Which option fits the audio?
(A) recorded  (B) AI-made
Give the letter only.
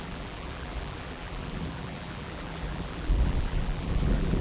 B